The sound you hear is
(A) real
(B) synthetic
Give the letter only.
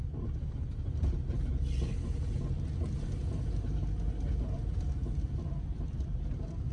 A